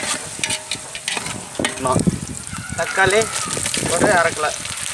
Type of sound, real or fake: real